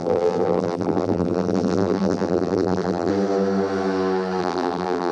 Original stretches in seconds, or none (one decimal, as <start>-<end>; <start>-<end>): 3.1-4.4